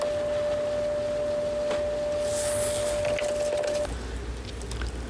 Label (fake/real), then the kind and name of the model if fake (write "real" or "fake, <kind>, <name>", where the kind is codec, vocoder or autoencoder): real